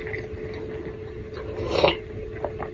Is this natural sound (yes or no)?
yes